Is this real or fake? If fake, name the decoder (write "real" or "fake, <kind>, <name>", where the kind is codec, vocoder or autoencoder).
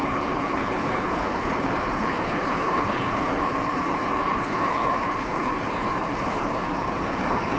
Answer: fake, codec, HILCodec